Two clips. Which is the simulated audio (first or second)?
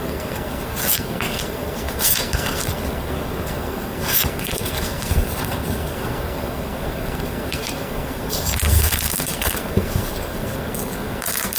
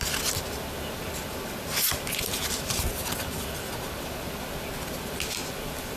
first